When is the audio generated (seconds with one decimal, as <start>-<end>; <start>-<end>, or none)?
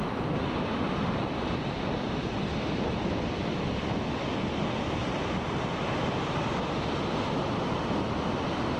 0.0-3.4